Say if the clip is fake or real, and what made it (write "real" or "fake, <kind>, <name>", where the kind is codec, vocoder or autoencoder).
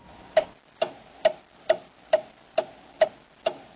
real